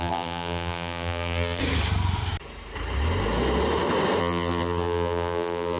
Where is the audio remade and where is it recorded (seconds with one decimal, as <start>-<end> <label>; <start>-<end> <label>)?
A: 0.0-1.6 remade; 1.6-4.2 recorded; 4.2-5.8 remade